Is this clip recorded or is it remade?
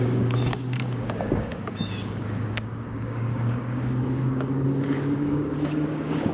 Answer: remade